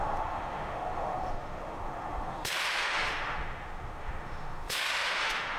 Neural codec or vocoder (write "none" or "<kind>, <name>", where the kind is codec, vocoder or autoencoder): autoencoder, DAC-VAE